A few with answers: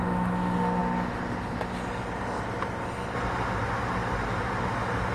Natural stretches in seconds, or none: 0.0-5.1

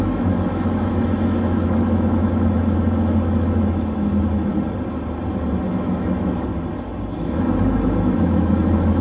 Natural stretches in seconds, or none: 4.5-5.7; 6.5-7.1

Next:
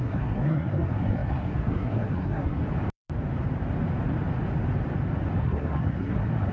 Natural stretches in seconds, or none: 2.6-5.4

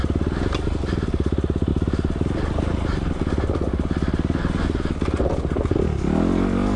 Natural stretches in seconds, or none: 0.0-6.8

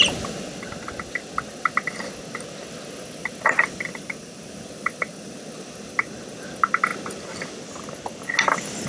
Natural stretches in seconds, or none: 0.0-8.9

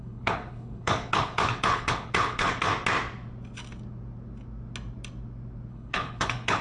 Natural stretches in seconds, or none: 2.7-5.7

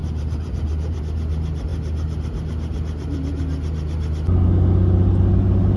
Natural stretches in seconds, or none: 1.0-5.8